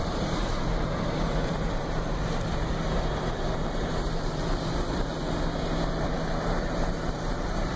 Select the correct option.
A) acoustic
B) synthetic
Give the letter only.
B